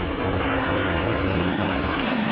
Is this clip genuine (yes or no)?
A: no